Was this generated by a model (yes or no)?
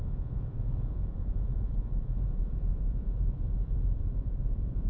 yes